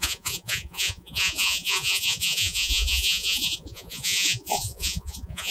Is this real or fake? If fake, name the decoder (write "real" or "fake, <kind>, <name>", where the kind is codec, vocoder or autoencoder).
fake, vocoder, Vocos